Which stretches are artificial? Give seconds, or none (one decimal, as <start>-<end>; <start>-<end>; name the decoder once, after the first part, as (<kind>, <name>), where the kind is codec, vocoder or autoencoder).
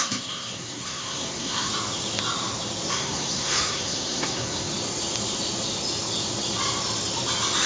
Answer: 0.0-1.7 (codec, SNAC); 2.9-4.7